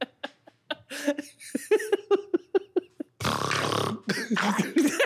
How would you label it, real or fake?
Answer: real